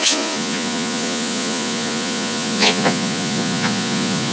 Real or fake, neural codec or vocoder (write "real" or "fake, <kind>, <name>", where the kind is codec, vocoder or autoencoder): fake, vocoder, Vocos